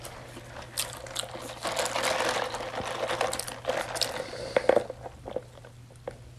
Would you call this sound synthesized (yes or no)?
no